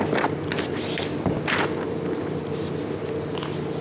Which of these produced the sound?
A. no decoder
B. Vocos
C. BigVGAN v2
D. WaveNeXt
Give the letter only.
A